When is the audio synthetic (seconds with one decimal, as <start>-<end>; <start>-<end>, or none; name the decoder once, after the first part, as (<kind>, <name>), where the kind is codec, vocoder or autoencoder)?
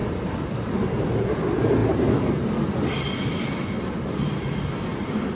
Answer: none